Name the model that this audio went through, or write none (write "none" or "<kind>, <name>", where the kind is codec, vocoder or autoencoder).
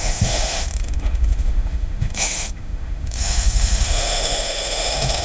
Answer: autoencoder, DAC-VAE